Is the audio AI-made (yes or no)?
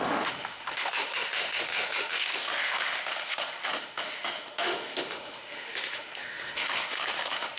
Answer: yes